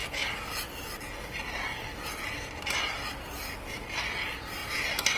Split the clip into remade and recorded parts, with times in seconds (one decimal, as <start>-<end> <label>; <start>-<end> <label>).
0.0-5.2 recorded